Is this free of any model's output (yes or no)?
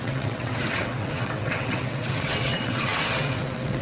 no